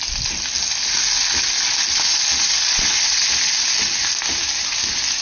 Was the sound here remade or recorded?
recorded